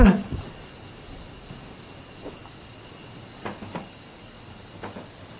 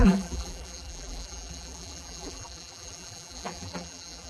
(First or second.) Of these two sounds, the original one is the first